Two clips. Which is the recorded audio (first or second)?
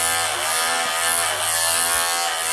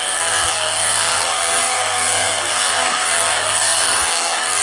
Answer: first